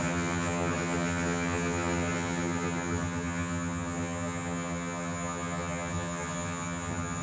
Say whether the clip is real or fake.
fake